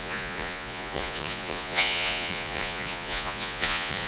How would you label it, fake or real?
fake